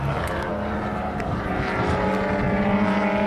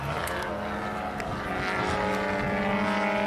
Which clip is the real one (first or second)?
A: second